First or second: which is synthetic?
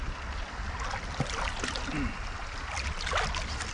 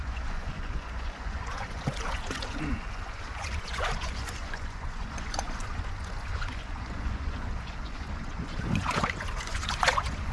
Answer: second